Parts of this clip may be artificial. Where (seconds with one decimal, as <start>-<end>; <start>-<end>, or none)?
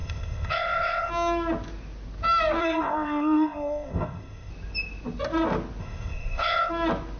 0.0-1.1; 2.6-4.5; 5.8-6.7